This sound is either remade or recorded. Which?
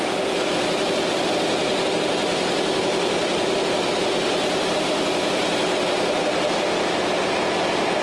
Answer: recorded